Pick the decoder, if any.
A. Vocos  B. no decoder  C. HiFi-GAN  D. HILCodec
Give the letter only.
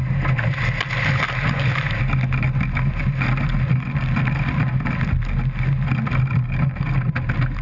B